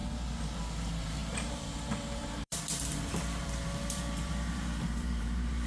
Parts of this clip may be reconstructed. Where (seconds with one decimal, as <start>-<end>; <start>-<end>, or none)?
0.6-5.7